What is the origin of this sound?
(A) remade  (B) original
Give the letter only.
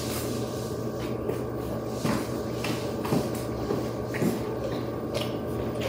B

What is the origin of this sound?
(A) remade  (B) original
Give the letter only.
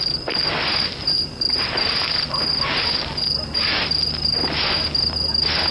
B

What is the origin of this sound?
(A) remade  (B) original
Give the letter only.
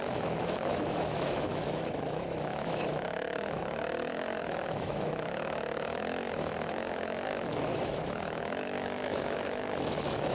A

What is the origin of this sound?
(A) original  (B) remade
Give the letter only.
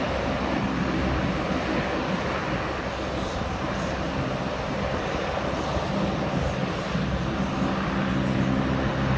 A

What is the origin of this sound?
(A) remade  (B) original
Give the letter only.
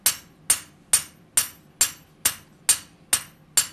B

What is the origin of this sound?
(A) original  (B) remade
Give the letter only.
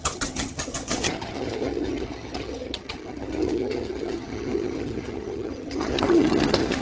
B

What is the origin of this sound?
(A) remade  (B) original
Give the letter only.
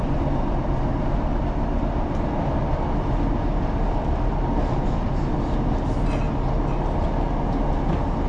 B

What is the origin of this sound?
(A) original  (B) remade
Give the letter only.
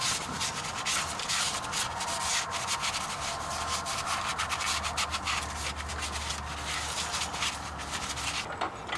A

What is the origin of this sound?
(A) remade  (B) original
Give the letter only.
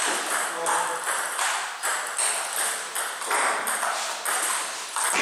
B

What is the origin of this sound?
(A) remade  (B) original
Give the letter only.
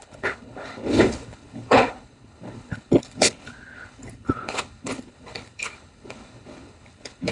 A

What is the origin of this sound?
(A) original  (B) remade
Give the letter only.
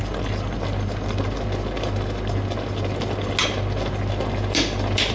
A